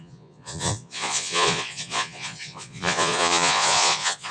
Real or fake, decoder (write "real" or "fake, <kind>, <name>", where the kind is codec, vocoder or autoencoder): fake, vocoder, Vocos